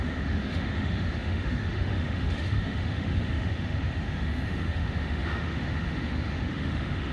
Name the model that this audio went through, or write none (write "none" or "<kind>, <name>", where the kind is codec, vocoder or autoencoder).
autoencoder, DAC-VAE